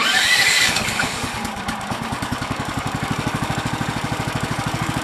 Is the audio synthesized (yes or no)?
yes